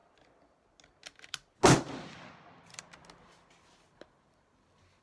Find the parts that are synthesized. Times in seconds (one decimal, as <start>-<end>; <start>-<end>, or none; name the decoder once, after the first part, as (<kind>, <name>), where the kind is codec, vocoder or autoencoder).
none